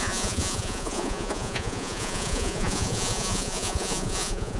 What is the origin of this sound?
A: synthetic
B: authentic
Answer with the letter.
A